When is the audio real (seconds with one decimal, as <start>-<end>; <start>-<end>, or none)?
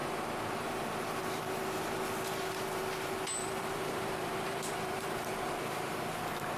0.0-3.4; 5.6-6.6